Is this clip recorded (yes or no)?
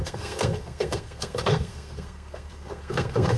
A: no